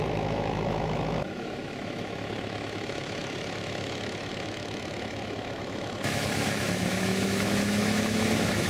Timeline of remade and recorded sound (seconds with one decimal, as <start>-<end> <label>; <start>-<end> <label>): 0.0-8.7 remade

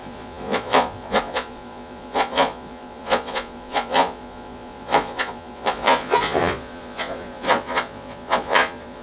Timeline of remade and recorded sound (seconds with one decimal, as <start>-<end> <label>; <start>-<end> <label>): 0.0-9.0 remade

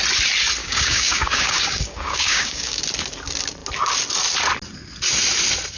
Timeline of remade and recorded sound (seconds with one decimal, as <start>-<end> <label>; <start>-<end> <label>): 0.0-0.6 recorded; 0.6-2.8 remade; 2.8-5.8 recorded

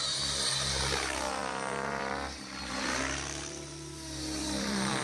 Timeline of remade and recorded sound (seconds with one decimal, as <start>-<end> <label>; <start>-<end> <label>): 0.0-5.0 remade

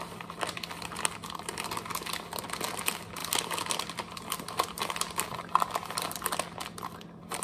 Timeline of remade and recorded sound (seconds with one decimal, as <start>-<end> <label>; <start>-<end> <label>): 0.0-7.4 recorded

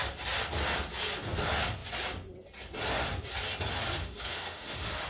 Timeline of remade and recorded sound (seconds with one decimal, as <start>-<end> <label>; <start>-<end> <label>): 0.0-4.0 recorded; 4.0-5.1 remade

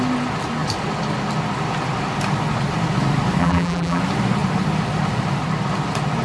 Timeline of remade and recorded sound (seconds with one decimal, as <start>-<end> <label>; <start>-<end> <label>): 0.0-3.4 recorded; 3.4-4.0 remade; 4.0-6.2 recorded

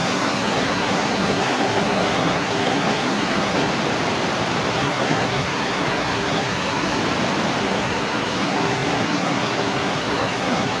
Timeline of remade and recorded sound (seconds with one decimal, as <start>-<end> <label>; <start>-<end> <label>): 0.0-3.7 remade; 3.7-4.7 recorded; 4.7-7.0 remade; 7.0-7.6 recorded; 7.6-10.8 remade